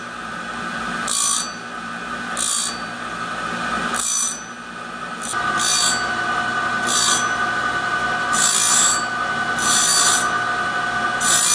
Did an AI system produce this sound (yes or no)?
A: no